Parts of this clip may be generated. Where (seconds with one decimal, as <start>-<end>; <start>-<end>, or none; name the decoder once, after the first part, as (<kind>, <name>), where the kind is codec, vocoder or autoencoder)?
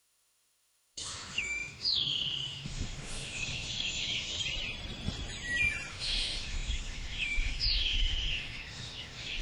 0.0-4.4 (autoencoder, DAC-VAE); 5.9-9.4